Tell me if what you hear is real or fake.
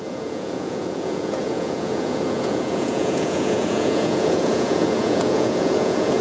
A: fake